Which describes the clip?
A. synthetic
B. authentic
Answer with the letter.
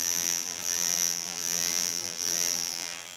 A